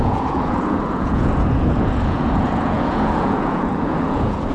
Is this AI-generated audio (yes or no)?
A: yes